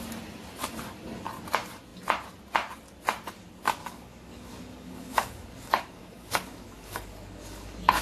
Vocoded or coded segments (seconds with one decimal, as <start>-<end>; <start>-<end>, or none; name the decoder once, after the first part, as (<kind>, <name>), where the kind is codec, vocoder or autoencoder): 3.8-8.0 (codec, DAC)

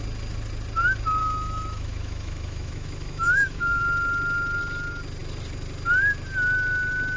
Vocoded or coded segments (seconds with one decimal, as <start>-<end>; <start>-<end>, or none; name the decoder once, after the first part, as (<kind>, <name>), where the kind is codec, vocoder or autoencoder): 1.2-3.8 (autoencoder, DAC-VAE)

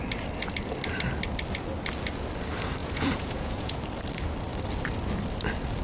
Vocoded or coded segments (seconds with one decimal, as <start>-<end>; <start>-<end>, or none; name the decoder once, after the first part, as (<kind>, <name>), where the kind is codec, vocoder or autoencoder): 2.8-3.8 (vocoder, Vocos)